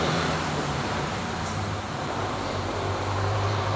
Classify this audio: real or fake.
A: fake